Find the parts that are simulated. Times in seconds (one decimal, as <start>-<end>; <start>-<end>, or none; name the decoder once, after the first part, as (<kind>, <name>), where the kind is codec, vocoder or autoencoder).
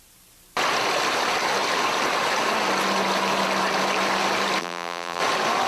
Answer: 4.6-5.2 (vocoder, BigVGAN v2)